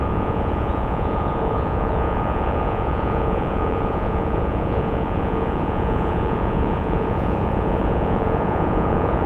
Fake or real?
fake